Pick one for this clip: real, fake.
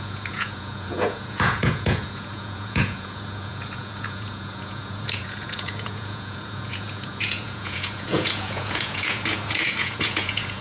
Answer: fake